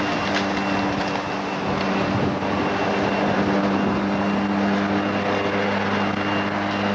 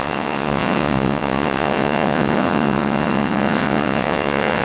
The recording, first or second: first